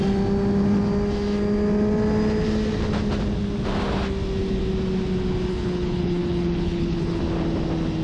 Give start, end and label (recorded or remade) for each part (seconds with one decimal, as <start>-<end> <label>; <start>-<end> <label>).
0.0-5.5 recorded; 5.5-7.2 remade; 7.2-8.0 recorded